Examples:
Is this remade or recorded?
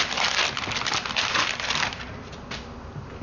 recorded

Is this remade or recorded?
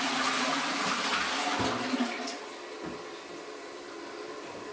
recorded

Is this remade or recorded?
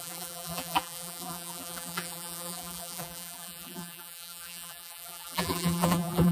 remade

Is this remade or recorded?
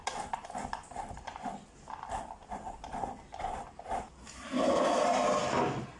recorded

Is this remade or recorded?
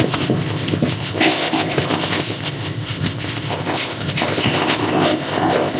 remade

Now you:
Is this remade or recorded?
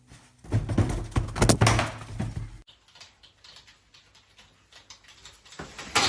recorded